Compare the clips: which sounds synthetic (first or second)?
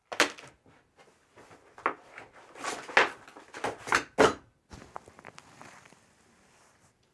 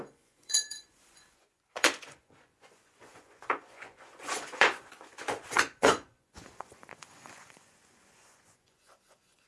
second